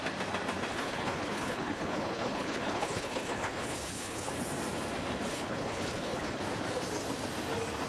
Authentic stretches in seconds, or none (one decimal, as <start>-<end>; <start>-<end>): 0.0-0.7; 4.3-5.3; 6.4-7.9

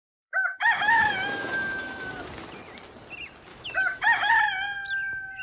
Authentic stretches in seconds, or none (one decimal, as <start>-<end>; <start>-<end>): 2.1-3.5; 4.3-5.4

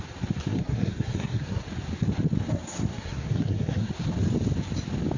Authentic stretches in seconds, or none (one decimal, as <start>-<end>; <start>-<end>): 0.0-0.5; 1.6-2.9; 3.9-5.2

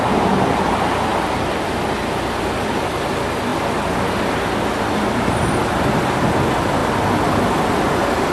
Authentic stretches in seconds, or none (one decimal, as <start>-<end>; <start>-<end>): 0.0-8.3

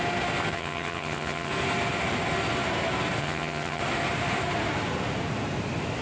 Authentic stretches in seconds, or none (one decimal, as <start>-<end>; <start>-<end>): 0.0-0.5; 1.5-3.2; 3.8-6.0

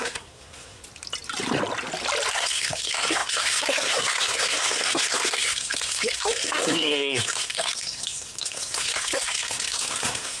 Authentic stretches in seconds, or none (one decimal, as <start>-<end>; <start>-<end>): 0.8-2.3

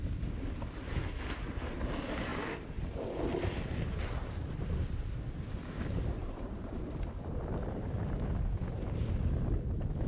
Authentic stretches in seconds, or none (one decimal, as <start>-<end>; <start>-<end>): 0.0-6.2; 7.4-10.1

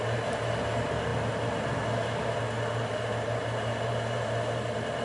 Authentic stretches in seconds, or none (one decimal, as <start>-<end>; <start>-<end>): 0.0-5.0